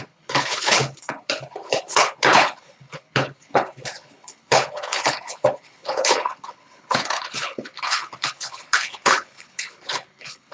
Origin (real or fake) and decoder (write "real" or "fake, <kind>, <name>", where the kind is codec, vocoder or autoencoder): fake, codec, HILCodec